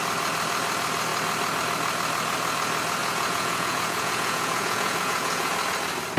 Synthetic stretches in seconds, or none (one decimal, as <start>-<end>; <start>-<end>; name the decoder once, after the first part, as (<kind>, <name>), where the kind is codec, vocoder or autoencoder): 3.0-5.5 (vocoder, Vocos)